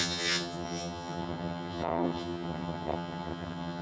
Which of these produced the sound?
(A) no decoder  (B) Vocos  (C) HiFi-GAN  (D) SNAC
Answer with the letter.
C